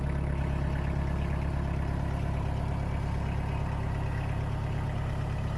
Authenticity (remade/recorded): recorded